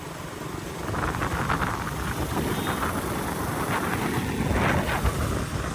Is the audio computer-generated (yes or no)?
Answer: no